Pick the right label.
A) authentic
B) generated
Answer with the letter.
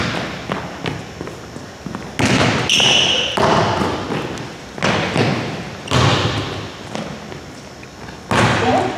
A